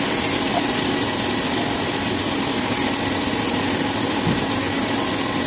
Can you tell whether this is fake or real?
real